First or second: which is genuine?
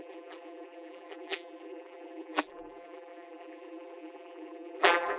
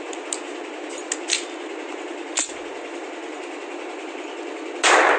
second